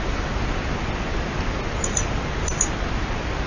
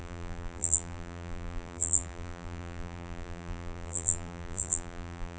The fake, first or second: second